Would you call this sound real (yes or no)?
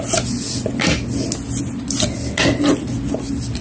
yes